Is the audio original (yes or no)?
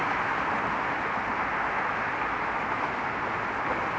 yes